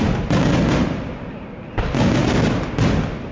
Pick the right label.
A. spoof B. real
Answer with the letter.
B